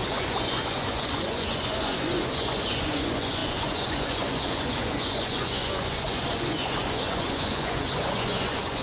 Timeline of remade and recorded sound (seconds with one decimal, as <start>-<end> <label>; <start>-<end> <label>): 0.0-8.8 remade